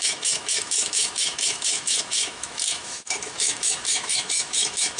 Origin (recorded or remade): remade